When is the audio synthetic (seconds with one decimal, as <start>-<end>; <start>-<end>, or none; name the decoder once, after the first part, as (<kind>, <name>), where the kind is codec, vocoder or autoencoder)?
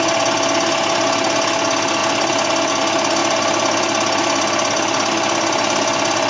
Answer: none